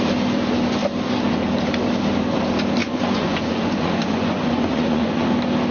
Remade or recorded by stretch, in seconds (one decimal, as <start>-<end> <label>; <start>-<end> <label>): 0.0-2.8 recorded; 2.8-5.3 remade; 5.3-5.7 recorded